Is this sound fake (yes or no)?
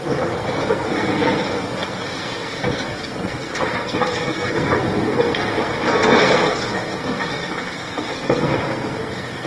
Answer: yes